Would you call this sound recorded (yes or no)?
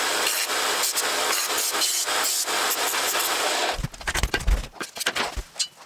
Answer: yes